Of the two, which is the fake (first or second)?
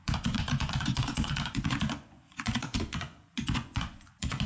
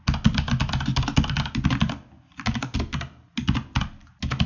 first